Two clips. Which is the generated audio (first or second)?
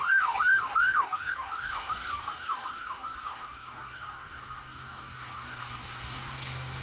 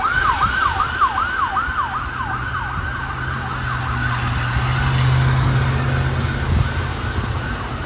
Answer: first